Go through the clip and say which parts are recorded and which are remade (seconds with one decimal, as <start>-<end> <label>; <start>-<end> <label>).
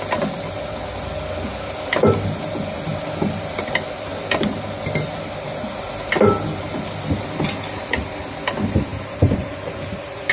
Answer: 0.0-8.9 recorded; 8.9-10.3 remade